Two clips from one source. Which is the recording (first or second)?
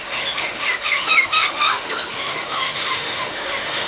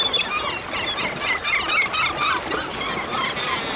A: second